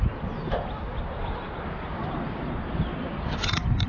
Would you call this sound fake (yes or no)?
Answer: no